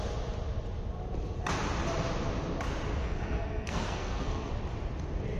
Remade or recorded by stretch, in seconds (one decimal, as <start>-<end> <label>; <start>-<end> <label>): 0.0-3.0 recorded; 3.0-4.5 remade; 4.5-5.4 recorded